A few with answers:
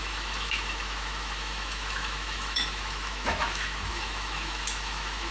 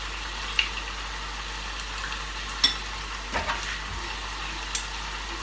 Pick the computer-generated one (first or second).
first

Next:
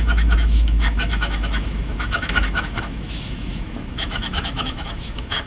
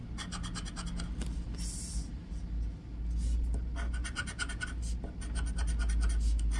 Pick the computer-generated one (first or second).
first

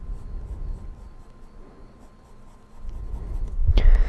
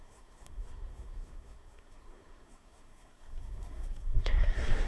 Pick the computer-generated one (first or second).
second